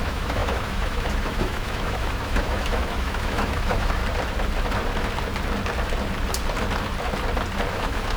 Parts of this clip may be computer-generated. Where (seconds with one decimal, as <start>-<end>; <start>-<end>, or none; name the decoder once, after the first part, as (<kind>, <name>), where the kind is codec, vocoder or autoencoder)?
0.0-4.0 (autoencoder, DAC-VAE); 7.7-8.2